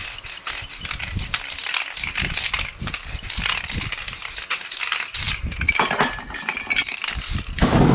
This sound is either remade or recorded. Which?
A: recorded